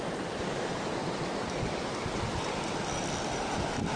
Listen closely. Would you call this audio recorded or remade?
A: recorded